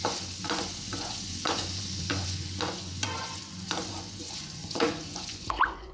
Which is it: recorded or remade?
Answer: remade